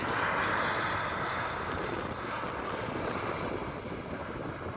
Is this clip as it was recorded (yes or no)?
yes